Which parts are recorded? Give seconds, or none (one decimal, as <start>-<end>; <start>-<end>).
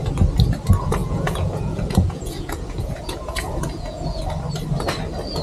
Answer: 0.0-1.0; 4.2-5.4